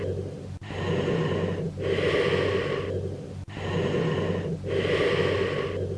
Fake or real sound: real